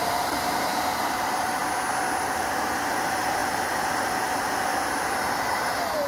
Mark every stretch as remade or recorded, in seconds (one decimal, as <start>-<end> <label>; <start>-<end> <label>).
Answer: 0.0-1.6 remade; 1.6-2.2 recorded; 2.2-4.7 remade; 4.7-5.4 recorded; 5.4-6.1 remade